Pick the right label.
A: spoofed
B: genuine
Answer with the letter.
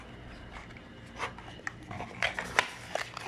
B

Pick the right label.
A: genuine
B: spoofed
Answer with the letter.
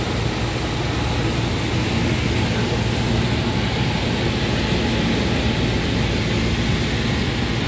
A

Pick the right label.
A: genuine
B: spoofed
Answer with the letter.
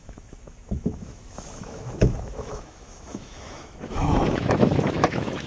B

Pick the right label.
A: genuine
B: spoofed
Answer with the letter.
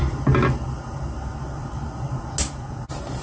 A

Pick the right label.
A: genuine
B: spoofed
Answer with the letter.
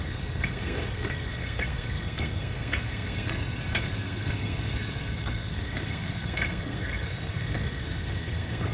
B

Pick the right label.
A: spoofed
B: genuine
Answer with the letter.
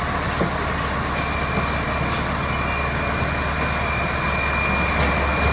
B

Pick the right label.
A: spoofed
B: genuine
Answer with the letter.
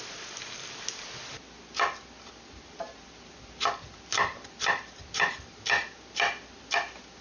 B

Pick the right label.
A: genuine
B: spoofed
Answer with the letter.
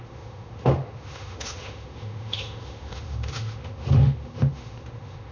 B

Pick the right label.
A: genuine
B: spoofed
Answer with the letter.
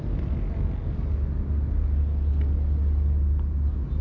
A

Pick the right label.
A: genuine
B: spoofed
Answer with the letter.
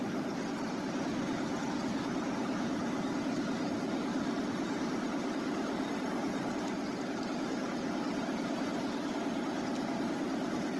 A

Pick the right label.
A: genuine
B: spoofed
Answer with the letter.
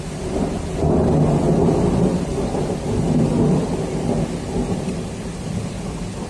A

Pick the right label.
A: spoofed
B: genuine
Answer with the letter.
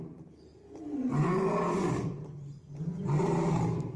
B